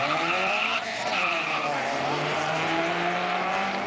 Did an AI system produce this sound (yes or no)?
yes